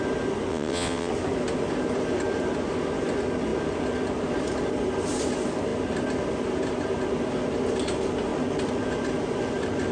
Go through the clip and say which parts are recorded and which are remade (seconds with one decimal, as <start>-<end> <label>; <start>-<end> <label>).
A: 0.0-0.5 recorded; 0.5-1.1 remade; 1.1-9.9 recorded